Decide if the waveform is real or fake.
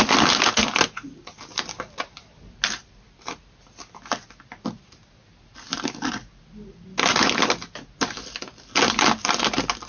real